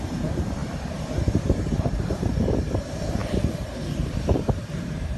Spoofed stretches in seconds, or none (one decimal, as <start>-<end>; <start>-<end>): 0.0-3.2; 3.9-5.2